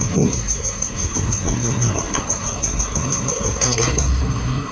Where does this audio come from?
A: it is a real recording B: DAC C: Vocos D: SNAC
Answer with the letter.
D